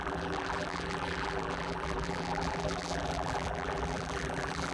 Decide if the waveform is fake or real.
fake